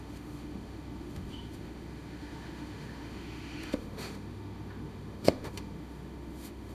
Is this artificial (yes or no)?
yes